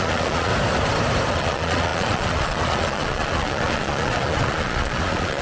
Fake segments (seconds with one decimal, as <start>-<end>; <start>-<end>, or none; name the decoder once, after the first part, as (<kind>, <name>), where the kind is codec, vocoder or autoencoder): 0.0-0.5 (vocoder, Vocos); 1.3-5.4